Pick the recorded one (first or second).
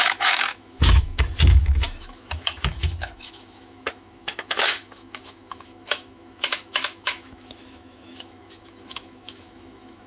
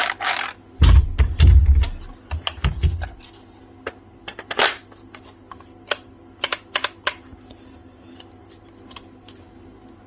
second